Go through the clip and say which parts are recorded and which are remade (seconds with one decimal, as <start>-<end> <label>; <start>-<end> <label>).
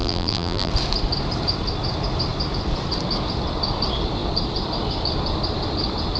0.0-0.7 remade; 0.7-6.2 recorded